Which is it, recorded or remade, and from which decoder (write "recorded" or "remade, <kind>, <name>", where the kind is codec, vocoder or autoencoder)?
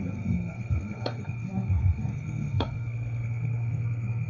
remade, codec, SNAC